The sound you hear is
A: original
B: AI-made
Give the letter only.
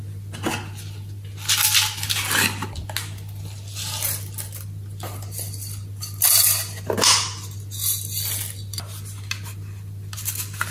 A